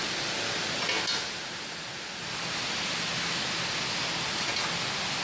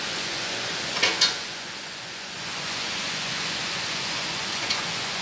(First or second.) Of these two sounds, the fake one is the second